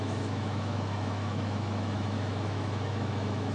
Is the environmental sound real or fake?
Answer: fake